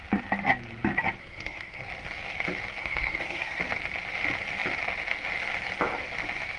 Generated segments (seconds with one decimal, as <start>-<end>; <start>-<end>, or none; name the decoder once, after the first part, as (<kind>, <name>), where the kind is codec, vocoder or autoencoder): 1.2-1.8 (codec, SNAC); 2.8-3.6